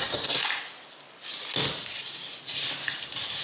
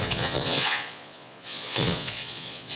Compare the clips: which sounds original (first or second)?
first